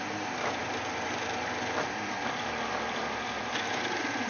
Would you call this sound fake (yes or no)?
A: yes